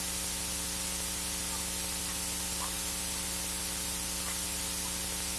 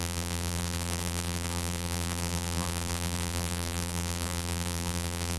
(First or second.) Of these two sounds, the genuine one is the first